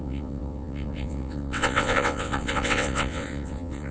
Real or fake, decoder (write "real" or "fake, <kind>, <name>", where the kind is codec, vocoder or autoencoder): fake, vocoder, WaveNeXt